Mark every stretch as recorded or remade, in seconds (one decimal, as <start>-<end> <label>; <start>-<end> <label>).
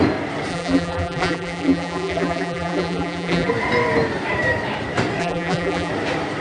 0.0-0.5 recorded; 0.5-3.5 remade; 3.5-5.2 recorded; 5.2-5.9 remade; 5.9-6.4 recorded